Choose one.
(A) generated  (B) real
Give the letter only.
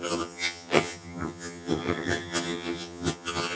A